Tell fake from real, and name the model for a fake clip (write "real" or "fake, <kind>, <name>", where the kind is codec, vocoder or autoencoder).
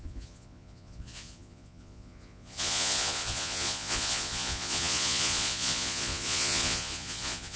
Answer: fake, vocoder, Vocos